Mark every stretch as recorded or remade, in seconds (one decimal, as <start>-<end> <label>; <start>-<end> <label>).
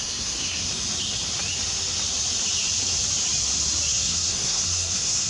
0.0-0.7 remade; 0.7-3.9 recorded; 3.9-5.3 remade